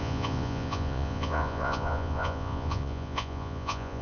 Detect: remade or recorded remade